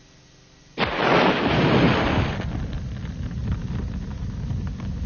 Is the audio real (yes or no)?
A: yes